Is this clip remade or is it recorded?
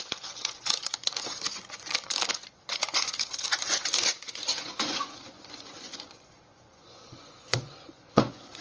remade